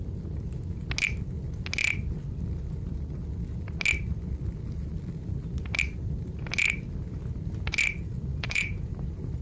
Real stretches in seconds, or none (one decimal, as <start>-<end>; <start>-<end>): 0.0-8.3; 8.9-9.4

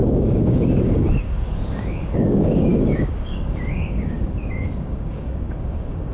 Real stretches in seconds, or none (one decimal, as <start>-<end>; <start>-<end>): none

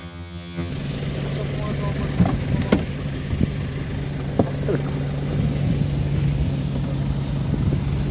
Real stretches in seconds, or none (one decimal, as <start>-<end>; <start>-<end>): 0.7-8.1

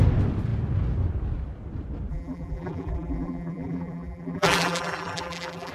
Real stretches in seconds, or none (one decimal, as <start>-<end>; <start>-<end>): 0.0-2.1